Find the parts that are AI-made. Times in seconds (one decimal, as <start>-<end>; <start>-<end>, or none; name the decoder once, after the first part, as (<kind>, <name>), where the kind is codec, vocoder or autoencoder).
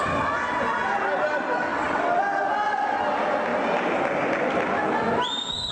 1.7-2.2 (vocoder, WaveNeXt)